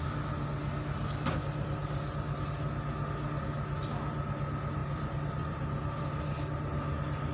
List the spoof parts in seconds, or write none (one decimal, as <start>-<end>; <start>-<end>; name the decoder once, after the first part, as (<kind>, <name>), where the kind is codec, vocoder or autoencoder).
4.8-6.0 (vocoder, BigVGAN v2)